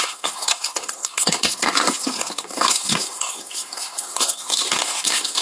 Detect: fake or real fake